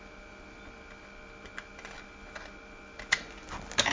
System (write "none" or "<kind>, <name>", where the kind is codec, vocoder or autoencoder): none